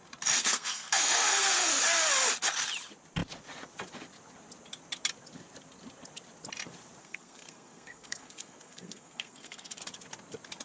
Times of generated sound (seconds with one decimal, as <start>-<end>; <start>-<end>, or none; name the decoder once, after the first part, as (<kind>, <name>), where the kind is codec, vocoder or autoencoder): 0.4-1.7 (codec, SNAC); 7.0-9.8